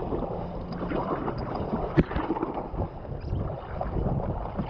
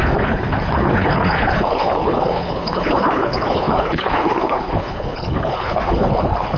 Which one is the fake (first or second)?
second